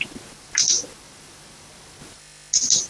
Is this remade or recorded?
recorded